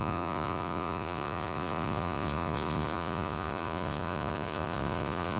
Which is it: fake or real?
fake